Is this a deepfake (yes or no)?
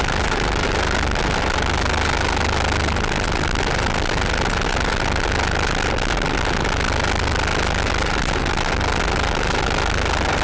no